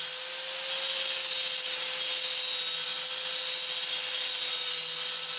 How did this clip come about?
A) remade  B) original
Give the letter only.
B